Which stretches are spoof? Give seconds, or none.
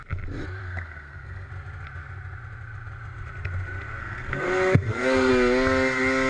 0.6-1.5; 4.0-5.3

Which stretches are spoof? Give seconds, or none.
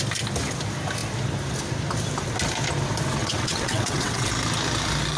3.2-4.3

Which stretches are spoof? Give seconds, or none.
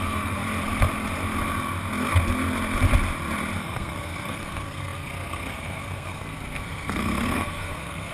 0.0-0.4; 3.6-8.1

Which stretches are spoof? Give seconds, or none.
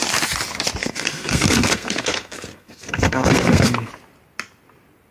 0.8-3.9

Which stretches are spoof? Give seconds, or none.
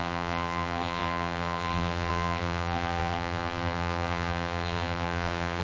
0.0-5.6